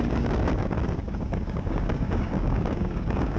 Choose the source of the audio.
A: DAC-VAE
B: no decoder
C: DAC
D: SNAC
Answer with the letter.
C